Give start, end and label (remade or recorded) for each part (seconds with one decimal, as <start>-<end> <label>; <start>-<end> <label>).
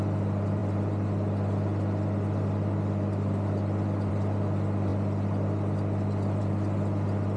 0.0-7.4 recorded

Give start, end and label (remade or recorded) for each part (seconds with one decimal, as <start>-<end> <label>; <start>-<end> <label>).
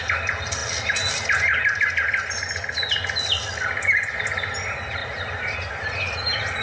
0.0-6.6 recorded